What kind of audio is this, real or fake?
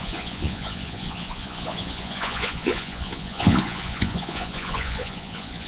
fake